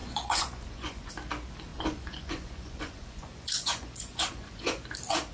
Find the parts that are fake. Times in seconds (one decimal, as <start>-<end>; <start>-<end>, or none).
0.0-1.1; 1.7-4.8